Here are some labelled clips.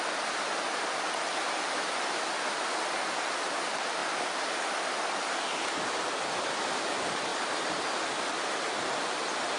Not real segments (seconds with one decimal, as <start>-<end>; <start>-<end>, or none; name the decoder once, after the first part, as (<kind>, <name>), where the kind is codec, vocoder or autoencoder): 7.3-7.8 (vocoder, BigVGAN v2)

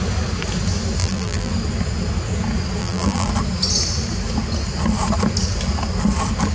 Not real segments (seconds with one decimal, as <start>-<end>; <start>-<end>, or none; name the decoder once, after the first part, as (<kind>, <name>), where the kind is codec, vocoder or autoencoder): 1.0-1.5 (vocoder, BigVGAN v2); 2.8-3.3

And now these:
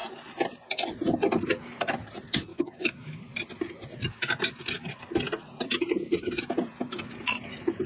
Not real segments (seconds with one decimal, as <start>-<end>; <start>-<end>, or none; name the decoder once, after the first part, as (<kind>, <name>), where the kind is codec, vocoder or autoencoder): 2.5-3.2 (autoencoder, DAC-VAE)